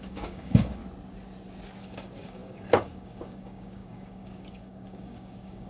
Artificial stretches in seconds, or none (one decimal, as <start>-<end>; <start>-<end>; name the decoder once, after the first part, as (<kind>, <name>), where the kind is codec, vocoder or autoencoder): 0.0-0.8 (codec, DAC); 1.8-5.7